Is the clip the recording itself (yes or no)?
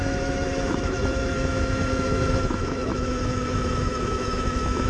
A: no